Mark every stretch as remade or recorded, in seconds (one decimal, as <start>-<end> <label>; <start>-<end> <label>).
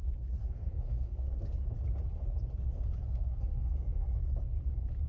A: 0.0-0.4 recorded; 0.4-1.3 remade; 1.3-3.1 recorded; 3.1-4.1 remade; 4.1-5.1 recorded